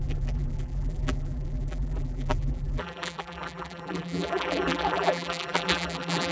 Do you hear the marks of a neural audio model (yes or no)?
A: yes